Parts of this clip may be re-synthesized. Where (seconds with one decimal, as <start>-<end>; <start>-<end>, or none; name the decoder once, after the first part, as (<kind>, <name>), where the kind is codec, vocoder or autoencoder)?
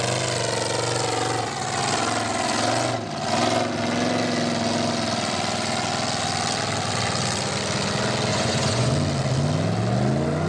8.3-8.9 (vocoder, Vocos)